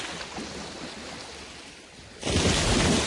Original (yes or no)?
yes